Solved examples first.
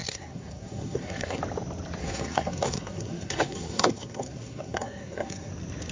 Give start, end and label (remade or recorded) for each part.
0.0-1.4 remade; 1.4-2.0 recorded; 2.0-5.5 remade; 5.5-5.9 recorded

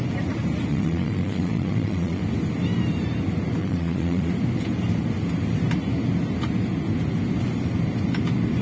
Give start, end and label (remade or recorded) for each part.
0.0-0.7 recorded; 0.7-2.2 remade; 2.2-3.6 recorded; 3.6-4.3 remade; 4.3-8.6 recorded